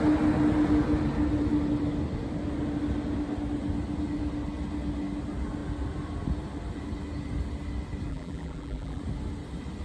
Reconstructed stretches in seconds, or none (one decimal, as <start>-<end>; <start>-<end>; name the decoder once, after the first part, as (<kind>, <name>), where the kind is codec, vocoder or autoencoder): 8.1-9.0 (vocoder, BigVGAN v2)